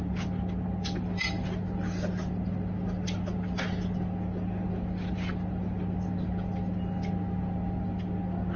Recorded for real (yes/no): yes